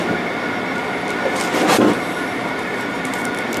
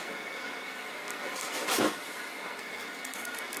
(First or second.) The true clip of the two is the first